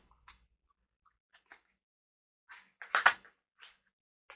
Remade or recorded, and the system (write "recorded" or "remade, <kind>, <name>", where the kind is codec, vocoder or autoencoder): recorded